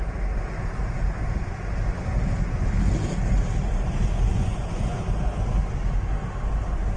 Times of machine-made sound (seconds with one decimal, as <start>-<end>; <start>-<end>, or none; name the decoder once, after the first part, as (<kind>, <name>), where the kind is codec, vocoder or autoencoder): 4.3-5.0 (vocoder, Vocos)